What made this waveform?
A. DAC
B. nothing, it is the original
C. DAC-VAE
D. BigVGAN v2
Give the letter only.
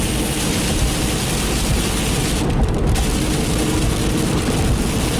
B